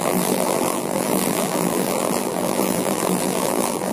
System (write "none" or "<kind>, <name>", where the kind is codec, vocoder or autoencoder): vocoder, BigVGAN v2